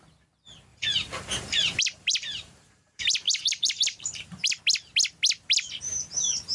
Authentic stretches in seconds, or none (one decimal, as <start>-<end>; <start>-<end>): 0.0-0.7; 4.6-6.5